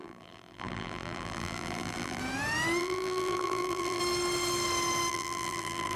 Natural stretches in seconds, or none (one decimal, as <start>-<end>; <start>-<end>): 2.2-2.8; 4.0-5.1